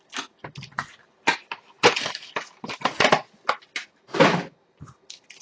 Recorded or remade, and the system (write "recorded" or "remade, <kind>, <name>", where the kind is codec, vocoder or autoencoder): recorded